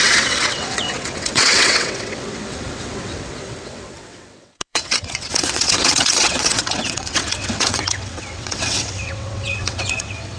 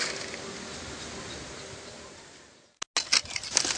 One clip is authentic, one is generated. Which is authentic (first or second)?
second